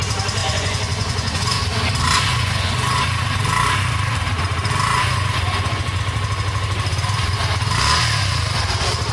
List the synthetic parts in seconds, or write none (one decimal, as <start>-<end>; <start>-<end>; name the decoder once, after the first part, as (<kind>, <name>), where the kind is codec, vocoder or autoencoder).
0.4-1.6 (vocoder, Vocos); 2.3-3.2; 4.9-6.0